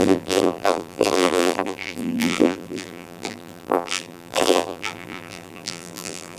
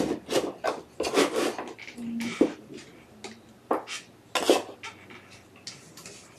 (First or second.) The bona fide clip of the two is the second